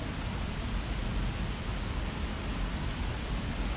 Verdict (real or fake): real